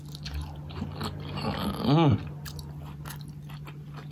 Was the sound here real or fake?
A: real